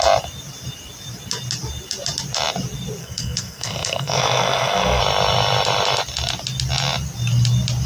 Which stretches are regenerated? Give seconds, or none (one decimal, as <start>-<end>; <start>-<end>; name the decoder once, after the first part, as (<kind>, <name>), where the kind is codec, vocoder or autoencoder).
3.0-5.0 (codec, SNAC)